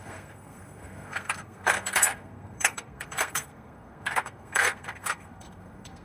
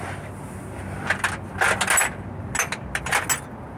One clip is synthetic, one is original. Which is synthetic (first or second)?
first